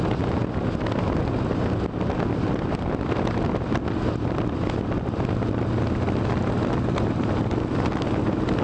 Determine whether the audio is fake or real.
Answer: real